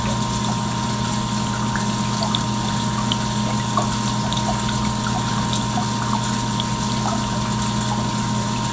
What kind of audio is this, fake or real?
real